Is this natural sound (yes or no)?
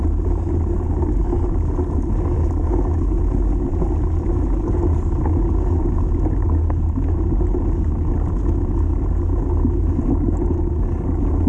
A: yes